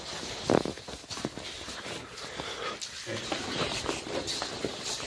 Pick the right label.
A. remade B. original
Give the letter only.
B